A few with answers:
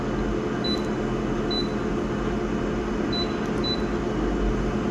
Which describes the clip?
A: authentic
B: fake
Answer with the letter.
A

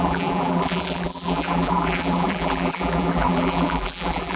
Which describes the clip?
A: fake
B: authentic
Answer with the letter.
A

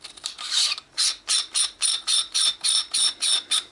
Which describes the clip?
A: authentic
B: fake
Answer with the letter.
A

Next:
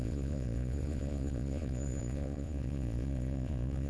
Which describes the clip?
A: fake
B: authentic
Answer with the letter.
A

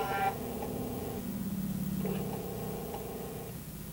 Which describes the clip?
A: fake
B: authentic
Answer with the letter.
A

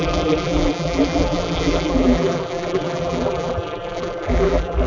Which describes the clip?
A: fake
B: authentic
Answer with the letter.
A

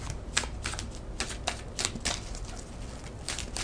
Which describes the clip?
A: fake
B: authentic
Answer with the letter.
B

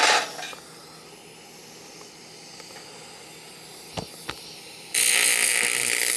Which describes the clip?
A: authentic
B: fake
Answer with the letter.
A